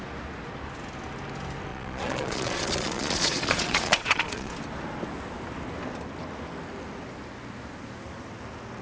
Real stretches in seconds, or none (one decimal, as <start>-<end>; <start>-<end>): 0.0-1.7; 4.5-8.8